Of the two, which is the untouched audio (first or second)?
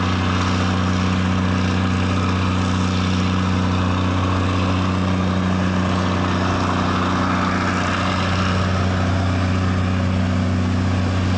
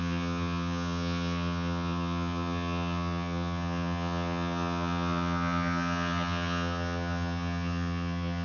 first